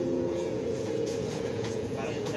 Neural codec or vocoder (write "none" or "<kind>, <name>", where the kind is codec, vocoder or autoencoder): vocoder, Vocos